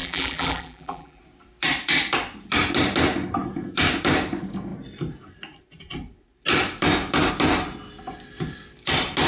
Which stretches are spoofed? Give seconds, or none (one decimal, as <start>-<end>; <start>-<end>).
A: 0.0-1.2